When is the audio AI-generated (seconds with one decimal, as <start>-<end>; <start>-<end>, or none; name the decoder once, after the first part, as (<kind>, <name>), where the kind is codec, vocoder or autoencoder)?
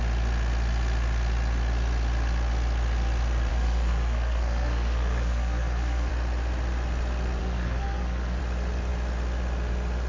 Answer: 3.5-6.1 (codec, SNAC); 7.4-8.4